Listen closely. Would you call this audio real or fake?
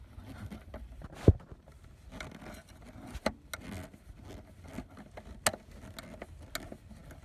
real